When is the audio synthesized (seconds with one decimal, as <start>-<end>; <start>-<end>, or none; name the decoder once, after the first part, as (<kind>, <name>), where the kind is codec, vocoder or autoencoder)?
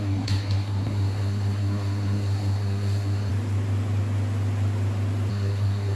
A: 0.0-3.3 (codec, SNAC); 5.3-6.0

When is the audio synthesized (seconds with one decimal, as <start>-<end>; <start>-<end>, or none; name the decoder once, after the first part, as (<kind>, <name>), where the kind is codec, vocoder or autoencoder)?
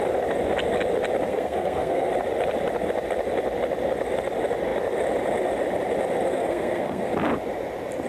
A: 1.3-2.1 (codec, SNAC); 6.3-7.1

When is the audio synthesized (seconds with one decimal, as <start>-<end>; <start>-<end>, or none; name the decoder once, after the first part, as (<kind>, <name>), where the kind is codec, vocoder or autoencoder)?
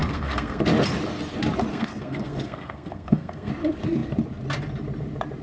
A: 0.0-0.6 (codec, SNAC); 1.7-3.5